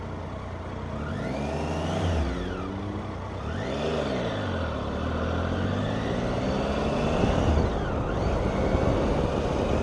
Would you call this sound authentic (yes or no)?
yes